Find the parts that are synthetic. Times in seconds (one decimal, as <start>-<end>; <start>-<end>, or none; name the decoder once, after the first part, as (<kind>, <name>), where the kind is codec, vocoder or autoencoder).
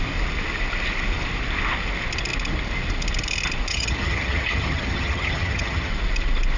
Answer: 3.7-5.9 (vocoder, HiFi-GAN)